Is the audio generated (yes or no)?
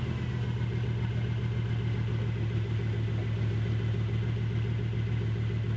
no